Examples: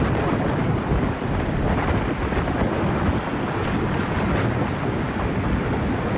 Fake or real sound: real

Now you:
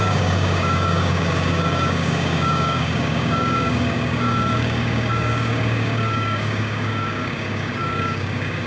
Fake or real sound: fake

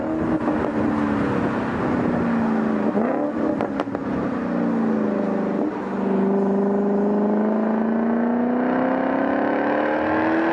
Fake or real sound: real